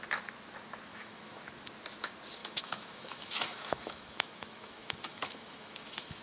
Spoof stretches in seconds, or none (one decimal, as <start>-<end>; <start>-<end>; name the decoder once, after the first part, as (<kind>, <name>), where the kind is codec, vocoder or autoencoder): 0.9-1.4 (autoencoder, DAC-VAE); 2.4-6.2